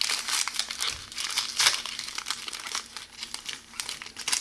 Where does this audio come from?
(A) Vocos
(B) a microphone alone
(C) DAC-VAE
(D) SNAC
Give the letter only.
B